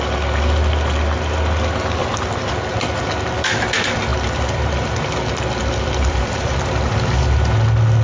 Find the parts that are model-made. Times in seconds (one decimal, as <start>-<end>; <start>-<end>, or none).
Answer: 2.0-2.5; 4.1-6.8